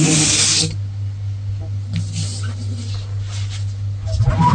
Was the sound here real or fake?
real